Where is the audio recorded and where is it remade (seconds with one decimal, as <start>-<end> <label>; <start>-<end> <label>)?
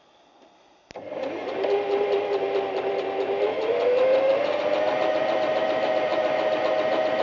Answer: 0.0-7.2 recorded